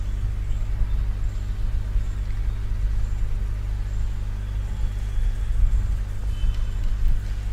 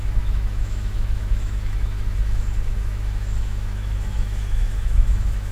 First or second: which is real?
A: first